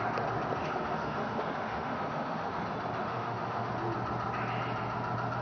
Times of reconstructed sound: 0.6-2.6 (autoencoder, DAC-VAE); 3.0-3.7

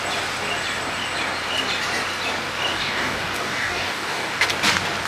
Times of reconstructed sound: 2.7-4.4 (codec, DAC)